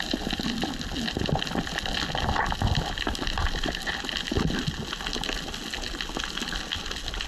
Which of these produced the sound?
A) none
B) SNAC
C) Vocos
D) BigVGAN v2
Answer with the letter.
A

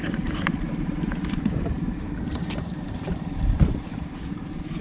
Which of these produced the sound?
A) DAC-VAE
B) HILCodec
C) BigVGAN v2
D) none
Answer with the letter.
C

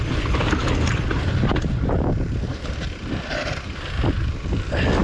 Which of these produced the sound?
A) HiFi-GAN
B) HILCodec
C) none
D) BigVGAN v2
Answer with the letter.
C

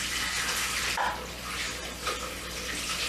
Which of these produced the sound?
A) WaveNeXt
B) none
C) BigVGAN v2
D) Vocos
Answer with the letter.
B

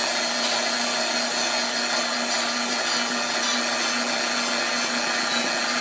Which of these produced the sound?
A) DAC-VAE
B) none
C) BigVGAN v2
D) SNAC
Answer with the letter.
B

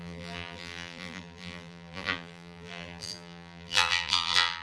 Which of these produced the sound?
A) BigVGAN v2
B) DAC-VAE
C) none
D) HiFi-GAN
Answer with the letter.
A